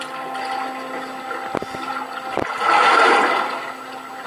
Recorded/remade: recorded